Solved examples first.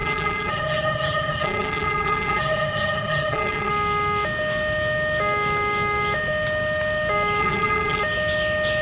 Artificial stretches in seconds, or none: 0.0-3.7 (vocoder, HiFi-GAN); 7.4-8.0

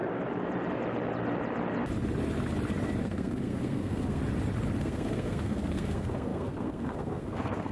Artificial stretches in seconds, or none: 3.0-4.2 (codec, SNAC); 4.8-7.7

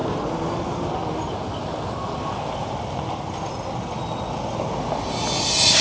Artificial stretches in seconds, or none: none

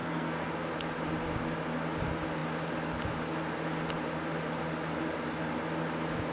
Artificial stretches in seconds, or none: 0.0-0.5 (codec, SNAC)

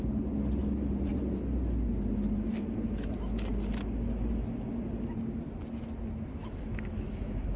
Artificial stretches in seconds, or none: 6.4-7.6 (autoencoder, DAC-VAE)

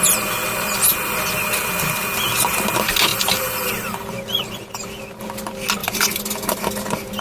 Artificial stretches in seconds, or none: 3.1-3.7 (vocoder, BigVGAN v2); 5.8-6.6

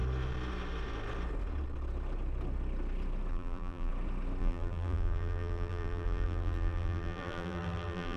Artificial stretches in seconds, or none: 3.3-3.9 (vocoder, BigVGAN v2); 4.4-8.2